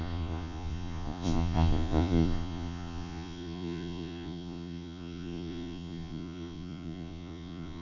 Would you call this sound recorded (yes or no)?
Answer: no